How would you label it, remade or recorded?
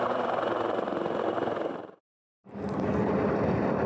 remade